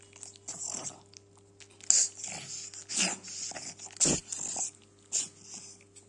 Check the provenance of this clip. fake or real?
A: real